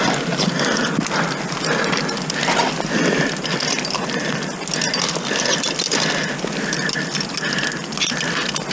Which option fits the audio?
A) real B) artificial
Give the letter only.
A